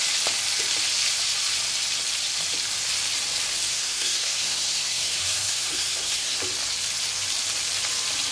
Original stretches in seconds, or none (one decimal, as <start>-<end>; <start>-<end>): 0.0-3.7; 6.4-8.3